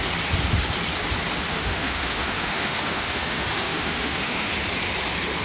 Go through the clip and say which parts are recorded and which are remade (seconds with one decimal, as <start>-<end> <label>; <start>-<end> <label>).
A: 0.0-1.5 recorded; 1.5-4.5 remade; 4.5-5.4 recorded